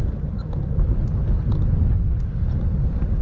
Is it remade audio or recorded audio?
recorded